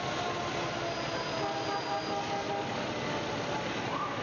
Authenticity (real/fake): real